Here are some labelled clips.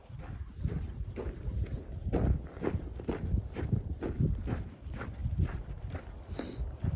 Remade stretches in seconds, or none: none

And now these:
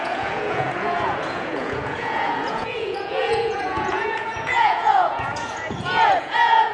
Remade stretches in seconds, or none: 0.0-6.7 (vocoder, Vocos)

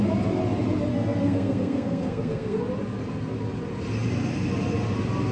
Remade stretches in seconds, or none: 0.9-2.6 (codec, SNAC)